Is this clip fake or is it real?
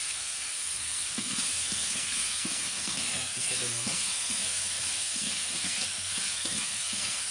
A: fake